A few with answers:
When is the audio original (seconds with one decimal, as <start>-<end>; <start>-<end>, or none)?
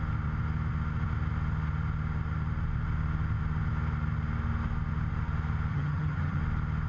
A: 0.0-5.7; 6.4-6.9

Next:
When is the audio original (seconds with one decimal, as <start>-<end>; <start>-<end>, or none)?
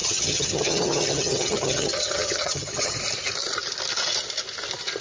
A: 3.0-5.0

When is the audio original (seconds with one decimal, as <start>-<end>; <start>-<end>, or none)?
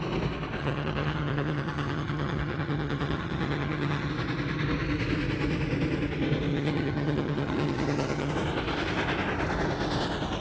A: 0.0-0.6; 4.1-6.5; 8.3-10.4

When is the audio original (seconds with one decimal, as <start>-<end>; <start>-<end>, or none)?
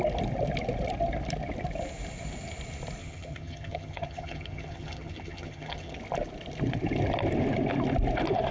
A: 0.0-3.0; 6.0-8.5